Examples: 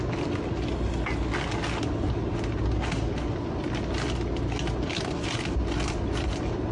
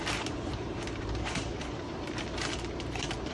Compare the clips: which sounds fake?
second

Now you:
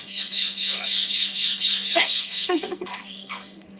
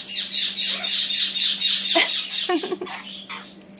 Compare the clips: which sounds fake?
first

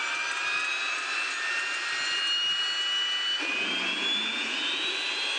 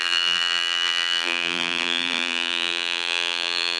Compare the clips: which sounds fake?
second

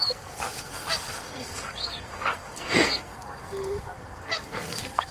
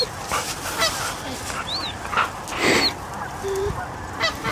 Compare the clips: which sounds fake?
first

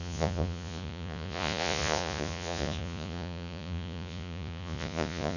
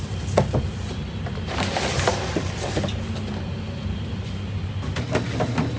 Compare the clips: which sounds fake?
first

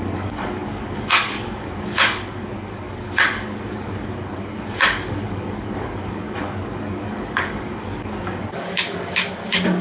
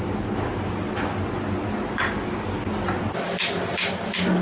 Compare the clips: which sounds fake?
first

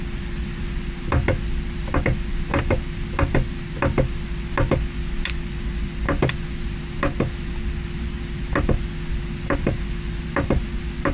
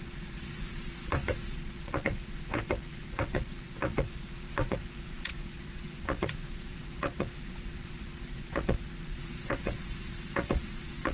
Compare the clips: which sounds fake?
second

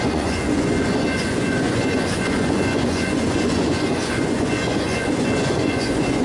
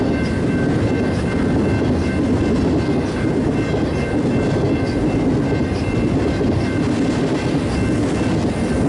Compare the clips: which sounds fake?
first